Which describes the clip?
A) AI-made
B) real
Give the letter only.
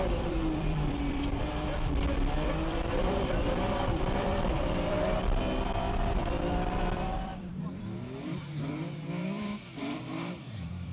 A